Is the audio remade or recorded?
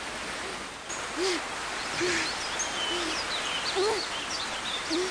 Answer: recorded